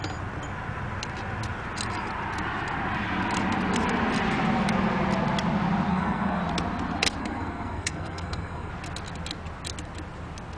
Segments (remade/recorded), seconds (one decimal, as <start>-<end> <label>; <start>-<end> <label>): 0.0-5.9 recorded; 5.9-6.4 remade; 6.4-7.2 recorded; 7.2-8.7 remade; 8.7-10.6 recorded